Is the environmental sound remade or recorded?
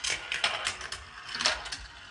recorded